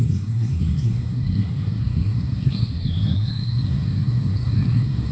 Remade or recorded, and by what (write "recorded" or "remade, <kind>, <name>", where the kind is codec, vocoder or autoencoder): remade, codec, SNAC